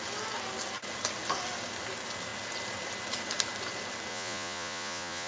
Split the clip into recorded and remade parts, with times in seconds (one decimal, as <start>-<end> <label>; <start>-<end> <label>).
0.0-4.1 recorded; 4.1-5.3 remade